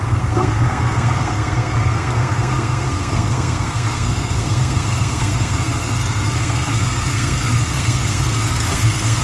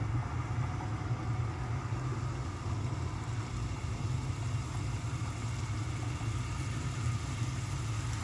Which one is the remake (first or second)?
first